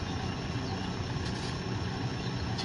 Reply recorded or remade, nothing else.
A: remade